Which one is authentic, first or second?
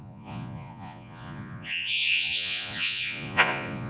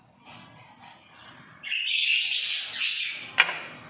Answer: second